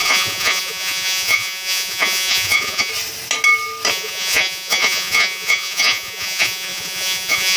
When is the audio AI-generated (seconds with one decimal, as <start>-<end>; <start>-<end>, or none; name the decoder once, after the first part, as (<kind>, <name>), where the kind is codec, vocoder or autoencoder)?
0.0-2.9 (vocoder, Vocos); 3.9-7.6